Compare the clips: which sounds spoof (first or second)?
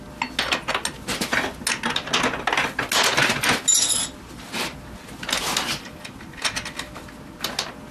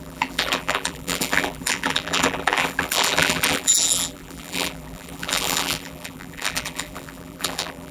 second